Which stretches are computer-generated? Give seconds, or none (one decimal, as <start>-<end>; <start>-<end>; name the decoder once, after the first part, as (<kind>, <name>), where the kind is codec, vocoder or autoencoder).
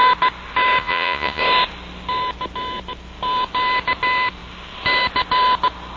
0.8-1.4 (vocoder, Vocos)